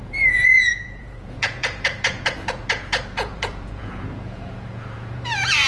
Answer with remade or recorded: remade